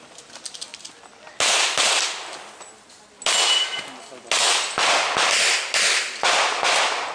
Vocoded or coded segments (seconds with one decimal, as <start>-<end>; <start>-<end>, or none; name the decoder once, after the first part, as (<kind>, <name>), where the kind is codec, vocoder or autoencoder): none

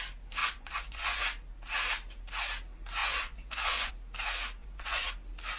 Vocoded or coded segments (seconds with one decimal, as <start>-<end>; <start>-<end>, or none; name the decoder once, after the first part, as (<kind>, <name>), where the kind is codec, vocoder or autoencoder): 0.4-1.2 (vocoder, Vocos); 3.0-3.9; 4.6-5.1

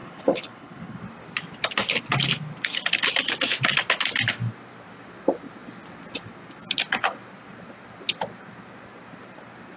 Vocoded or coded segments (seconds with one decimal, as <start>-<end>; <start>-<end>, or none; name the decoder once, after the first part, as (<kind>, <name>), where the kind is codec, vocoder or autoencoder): 0.0-1.0 (codec, HILCodec)

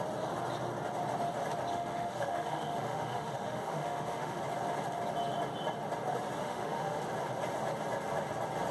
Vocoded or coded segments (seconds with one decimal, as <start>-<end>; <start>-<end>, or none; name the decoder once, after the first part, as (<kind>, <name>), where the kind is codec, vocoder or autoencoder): 1.7-4.4 (autoencoder, DAC-VAE); 6.4-7.0

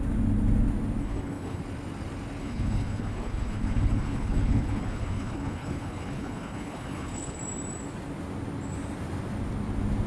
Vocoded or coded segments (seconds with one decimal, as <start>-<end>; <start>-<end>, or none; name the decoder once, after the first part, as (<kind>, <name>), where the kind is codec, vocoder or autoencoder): 1.0-1.6 (codec, HILCodec); 2.4-7.4

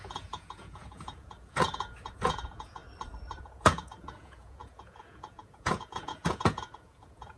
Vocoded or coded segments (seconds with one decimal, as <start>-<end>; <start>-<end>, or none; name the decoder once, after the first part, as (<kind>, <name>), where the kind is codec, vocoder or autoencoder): 0.0-2.8 (vocoder, Vocos); 3.4-7.4